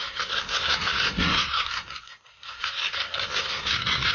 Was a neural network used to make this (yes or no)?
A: yes